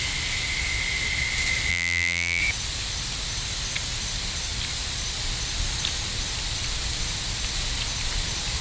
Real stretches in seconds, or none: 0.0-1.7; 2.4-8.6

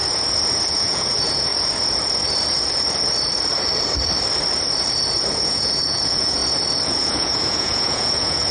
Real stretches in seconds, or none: 0.0-0.7; 1.5-5.3; 6.4-6.9

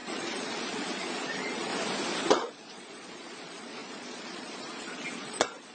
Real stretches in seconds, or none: 1.7-2.3